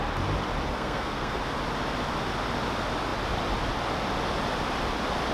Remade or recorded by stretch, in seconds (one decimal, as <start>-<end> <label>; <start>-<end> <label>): 0.0-0.7 recorded; 0.7-1.4 remade; 1.4-5.3 recorded